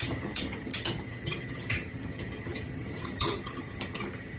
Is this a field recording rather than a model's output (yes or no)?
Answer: no